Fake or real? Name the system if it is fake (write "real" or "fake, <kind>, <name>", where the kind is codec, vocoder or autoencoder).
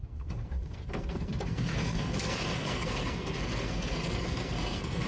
fake, codec, SNAC